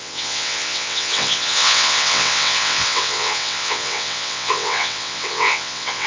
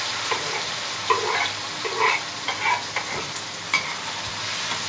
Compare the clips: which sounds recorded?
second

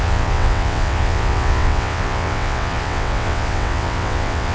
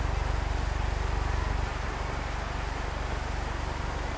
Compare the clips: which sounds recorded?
second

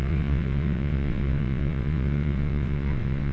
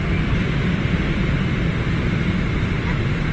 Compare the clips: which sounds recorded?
second